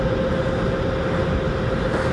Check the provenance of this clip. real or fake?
real